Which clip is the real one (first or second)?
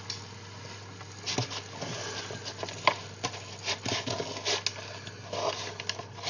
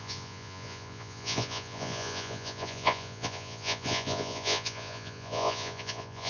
first